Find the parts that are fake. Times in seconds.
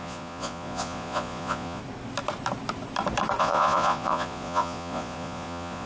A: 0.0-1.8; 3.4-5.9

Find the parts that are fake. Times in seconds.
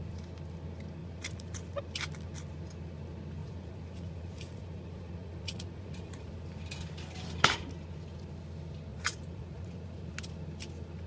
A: 1.0-1.8; 3.4-6.3; 8.9-10.1